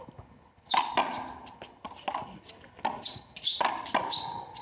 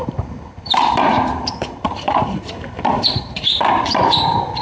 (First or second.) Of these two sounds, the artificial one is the second